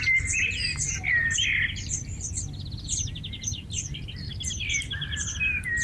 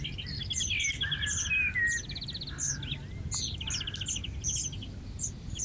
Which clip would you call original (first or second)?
second